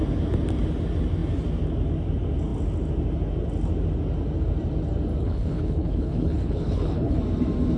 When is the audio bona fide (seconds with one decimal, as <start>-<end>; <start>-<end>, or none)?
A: 0.0-5.2; 7.2-7.8